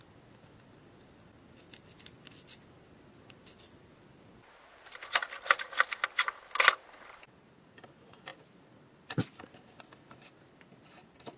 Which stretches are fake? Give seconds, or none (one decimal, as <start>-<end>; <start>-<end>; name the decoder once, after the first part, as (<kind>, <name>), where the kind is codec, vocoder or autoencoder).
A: none